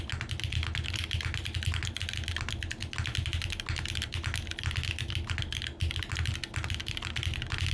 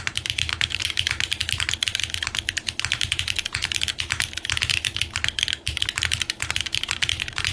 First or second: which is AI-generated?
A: second